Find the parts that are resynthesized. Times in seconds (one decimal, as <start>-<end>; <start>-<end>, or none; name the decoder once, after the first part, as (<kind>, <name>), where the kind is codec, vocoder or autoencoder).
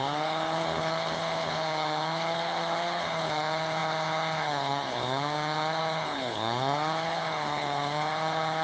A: 0.0-8.6 (codec, HILCodec)